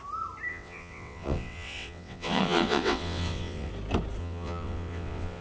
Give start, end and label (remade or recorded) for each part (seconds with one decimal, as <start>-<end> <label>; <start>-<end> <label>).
0.0-0.5 recorded; 0.5-3.7 remade; 3.7-4.2 recorded; 4.2-5.4 remade